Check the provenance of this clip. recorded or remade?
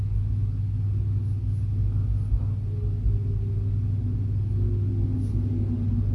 recorded